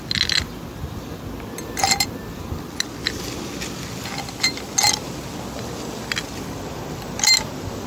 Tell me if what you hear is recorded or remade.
recorded